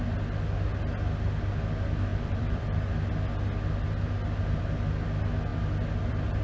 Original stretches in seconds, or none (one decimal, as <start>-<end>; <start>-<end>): 0.0-2.1; 2.9-5.5

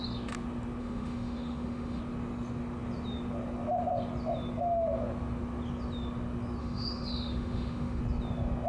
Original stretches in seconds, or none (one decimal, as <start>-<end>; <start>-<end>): 0.0-0.8; 2.0-6.6; 8.0-8.7